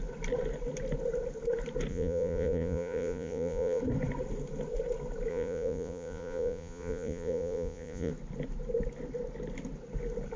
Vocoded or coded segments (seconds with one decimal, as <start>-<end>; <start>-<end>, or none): 1.9-3.8; 5.3-8.1